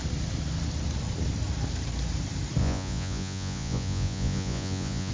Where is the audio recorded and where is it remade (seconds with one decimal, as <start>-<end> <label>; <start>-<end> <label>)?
0.0-2.6 recorded; 2.6-5.1 remade